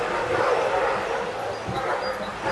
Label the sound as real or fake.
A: real